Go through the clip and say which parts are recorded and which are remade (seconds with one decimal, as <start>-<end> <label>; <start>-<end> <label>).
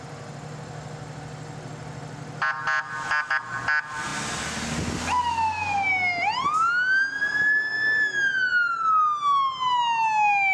0.0-10.5 recorded